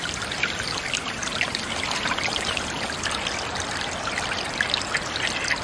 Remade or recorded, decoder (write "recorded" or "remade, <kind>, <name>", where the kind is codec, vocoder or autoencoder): recorded